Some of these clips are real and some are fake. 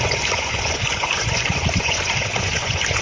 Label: fake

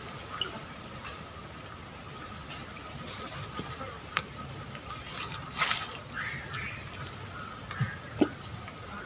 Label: real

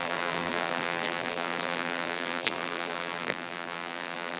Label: fake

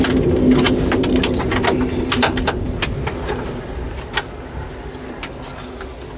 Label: real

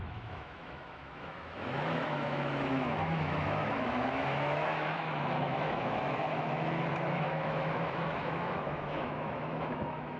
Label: fake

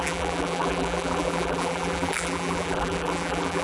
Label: fake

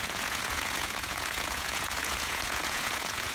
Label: fake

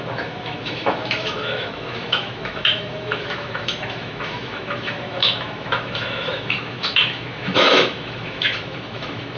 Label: fake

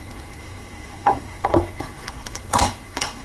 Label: fake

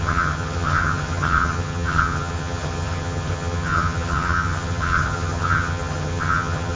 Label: fake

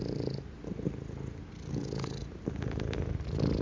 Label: real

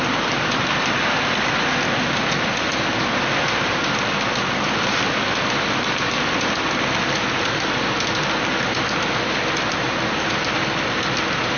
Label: real